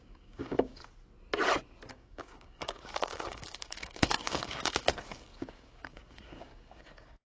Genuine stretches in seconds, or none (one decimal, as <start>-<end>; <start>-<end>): 0.8-1.9